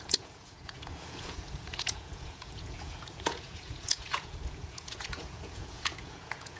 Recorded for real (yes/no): no